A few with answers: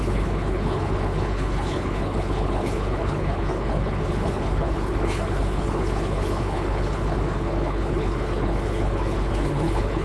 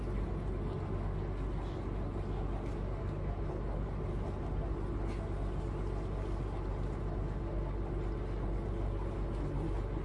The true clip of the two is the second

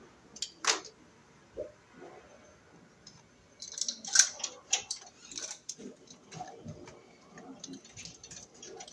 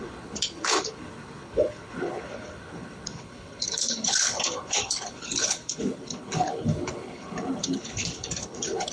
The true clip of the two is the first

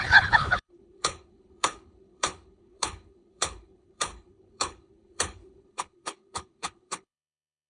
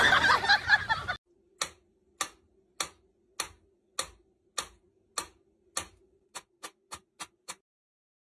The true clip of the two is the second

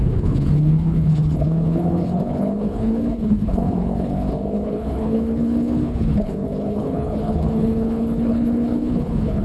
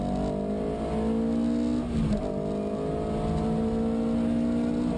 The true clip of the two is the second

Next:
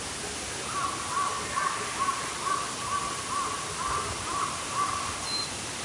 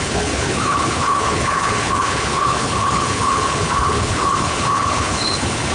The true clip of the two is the first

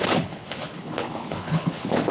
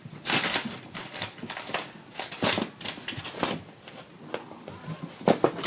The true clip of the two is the second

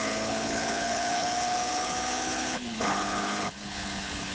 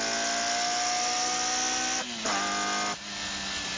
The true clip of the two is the second